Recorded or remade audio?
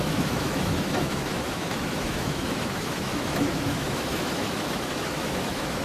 remade